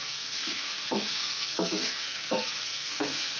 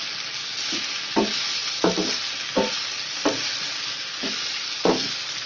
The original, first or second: second